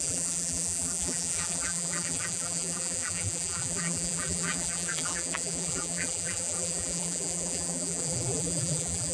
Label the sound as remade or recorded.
remade